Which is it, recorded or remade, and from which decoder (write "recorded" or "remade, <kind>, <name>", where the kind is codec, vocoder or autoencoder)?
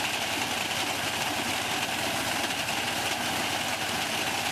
recorded